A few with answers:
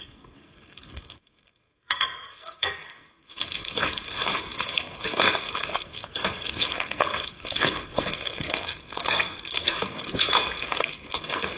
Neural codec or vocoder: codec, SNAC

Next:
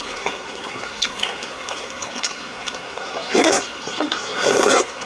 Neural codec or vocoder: codec, SNAC